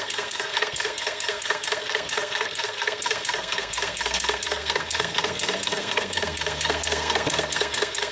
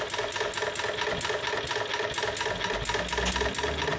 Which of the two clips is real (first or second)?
second